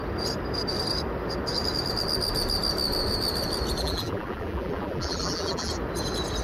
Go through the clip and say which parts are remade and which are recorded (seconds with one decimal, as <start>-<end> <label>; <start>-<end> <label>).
0.0-3.8 recorded; 3.8-5.7 remade; 5.7-6.4 recorded